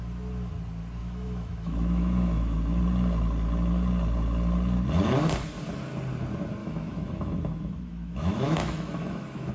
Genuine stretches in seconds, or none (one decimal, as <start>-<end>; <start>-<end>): 0.0-1.0; 2.8-6.6